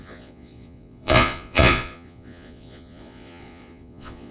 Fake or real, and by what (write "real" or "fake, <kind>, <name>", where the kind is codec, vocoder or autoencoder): fake, vocoder, Vocos